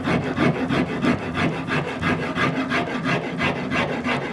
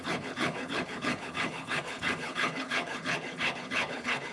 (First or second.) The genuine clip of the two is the first